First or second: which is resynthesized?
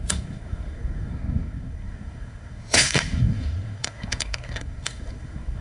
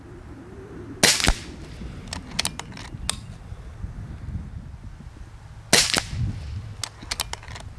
first